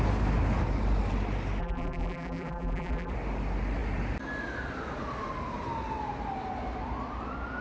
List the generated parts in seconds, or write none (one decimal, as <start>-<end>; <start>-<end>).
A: 1.6-3.1